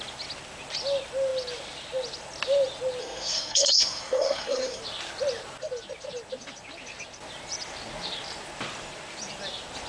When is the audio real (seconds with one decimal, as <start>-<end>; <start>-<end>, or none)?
0.0-3.0; 4.8-9.9